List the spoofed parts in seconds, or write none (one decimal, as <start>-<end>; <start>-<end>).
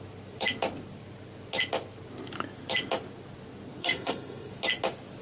3.8-4.5